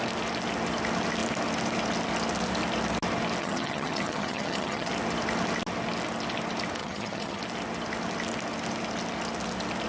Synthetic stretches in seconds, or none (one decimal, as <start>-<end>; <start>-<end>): 3.4-4.9; 6.8-7.4